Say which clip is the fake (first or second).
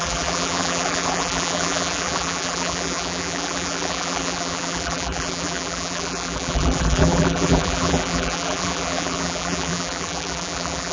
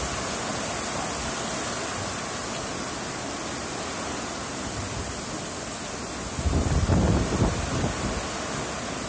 first